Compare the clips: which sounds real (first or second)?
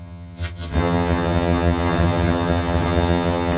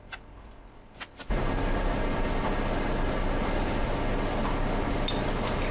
second